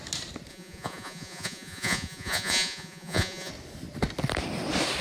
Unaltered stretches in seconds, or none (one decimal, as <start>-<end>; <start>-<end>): 0.0-0.5; 3.5-5.0